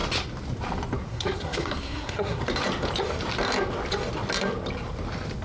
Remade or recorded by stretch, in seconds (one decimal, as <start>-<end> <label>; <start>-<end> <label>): 0.0-1.1 recorded; 1.1-2.4 remade; 2.4-5.4 recorded